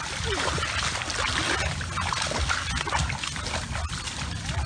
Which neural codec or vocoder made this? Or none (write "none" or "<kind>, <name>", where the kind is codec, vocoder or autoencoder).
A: none